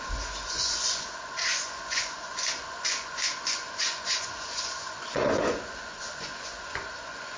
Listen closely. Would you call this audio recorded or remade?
remade